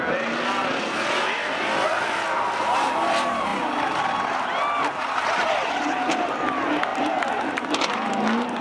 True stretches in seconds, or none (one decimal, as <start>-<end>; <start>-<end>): 0.0-8.6